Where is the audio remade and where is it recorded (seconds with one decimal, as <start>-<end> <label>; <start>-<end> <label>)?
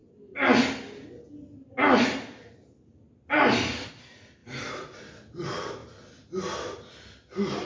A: 0.0-4.4 recorded; 4.4-5.2 remade; 5.2-7.7 recorded